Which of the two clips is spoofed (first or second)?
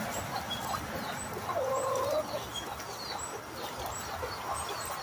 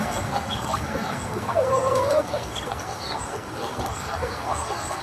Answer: second